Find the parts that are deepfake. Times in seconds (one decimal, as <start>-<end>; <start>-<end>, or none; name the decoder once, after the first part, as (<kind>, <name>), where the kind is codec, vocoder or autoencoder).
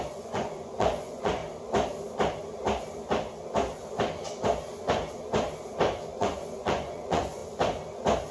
0.0-1.4 (vocoder, Vocos); 6.2-7.4